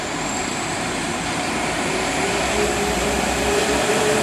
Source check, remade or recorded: remade